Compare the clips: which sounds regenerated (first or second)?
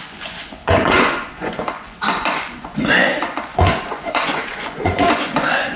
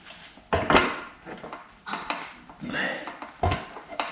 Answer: first